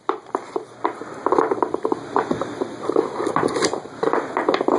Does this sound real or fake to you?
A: real